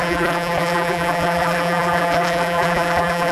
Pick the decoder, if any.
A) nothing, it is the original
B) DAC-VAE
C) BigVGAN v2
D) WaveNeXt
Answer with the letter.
C